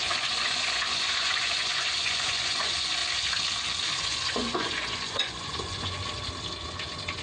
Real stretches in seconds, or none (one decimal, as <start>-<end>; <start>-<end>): 3.0-4.0; 6.0-6.6